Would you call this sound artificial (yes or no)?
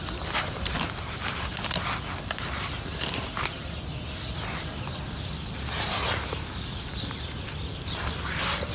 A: no